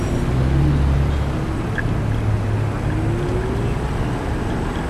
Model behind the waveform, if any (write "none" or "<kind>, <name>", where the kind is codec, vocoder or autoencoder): none